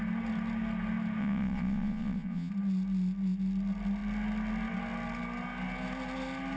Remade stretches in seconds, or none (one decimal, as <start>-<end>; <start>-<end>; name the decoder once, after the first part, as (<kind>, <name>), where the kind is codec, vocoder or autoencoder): 1.2-2.5 (vocoder, Vocos)